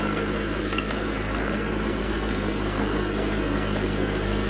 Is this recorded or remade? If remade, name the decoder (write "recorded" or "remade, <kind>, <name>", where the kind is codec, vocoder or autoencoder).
remade, codec, SNAC